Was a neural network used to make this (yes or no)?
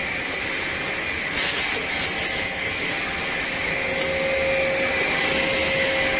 no